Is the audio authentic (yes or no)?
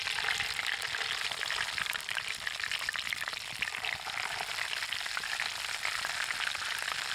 yes